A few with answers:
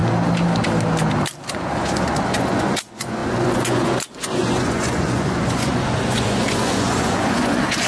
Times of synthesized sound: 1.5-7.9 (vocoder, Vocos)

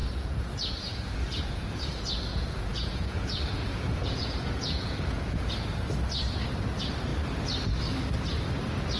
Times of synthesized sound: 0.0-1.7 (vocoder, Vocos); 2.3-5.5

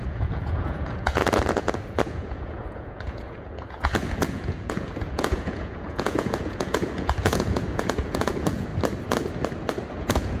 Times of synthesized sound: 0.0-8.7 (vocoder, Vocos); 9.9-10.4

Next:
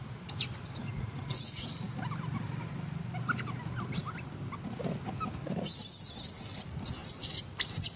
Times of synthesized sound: 0.8-1.7 (vocoder, Vocos)

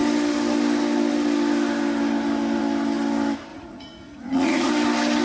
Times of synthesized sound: 3.5-4.7 (vocoder, Vocos)

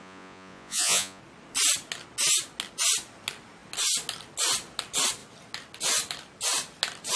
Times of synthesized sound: 0.0-1.2 (vocoder, Vocos)